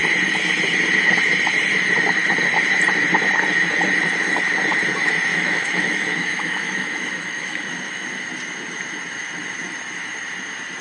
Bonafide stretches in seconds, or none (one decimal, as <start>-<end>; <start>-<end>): 0.0-5.3; 8.2-10.8